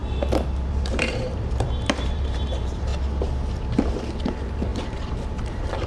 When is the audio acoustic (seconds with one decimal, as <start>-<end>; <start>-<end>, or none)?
0.0-0.7; 2.9-4.0